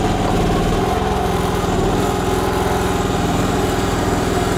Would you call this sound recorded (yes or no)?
no